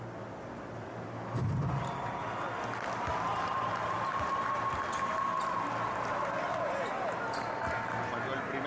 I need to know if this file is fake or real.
real